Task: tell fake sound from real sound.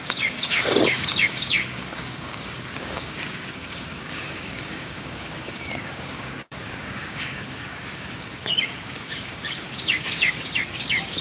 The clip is fake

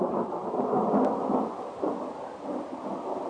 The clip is real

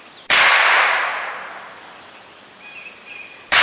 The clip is real